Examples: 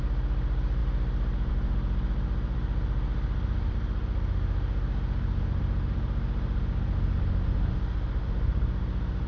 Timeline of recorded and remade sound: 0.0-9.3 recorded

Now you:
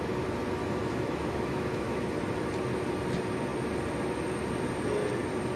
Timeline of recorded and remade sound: 0.0-0.6 recorded; 0.6-2.0 remade; 2.0-5.6 recorded

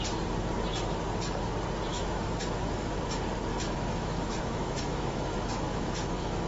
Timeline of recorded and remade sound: 0.0-1.9 recorded; 1.9-3.0 remade; 3.0-3.5 recorded; 3.5-6.5 remade

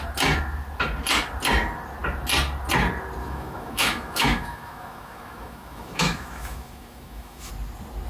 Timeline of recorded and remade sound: 0.0-3.2 recorded; 3.2-7.5 remade; 7.5-8.1 recorded

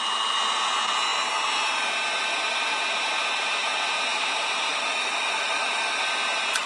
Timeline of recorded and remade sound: 0.0-4.7 recorded; 4.7-6.0 remade; 6.0-6.7 recorded

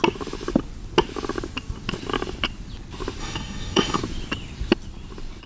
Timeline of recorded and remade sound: 0.0-3.2 recorded; 3.2-4.0 remade; 4.0-5.5 recorded

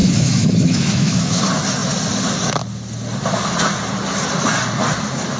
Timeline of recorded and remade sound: 0.0-1.4 remade; 1.4-5.4 recorded